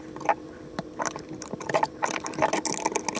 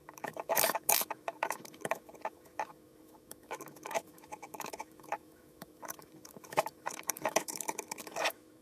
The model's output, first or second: second